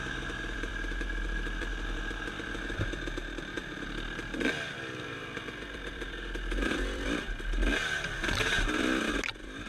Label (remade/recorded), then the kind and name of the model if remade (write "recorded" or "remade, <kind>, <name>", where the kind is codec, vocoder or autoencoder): recorded